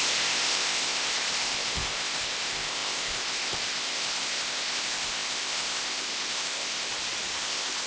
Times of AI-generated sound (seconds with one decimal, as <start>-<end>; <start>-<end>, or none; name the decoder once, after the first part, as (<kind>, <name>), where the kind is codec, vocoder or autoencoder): 0.0-6.9 (codec, ZipCodec); 7.4-7.9